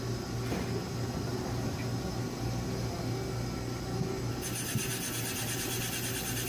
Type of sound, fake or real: real